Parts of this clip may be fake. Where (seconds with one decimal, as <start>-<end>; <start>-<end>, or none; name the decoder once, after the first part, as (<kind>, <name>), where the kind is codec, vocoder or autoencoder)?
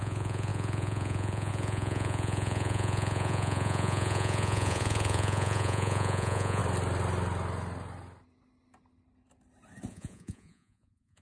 0.0-6.6 (vocoder, Vocos); 9.9-11.2